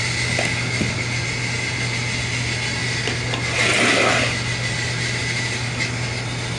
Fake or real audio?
real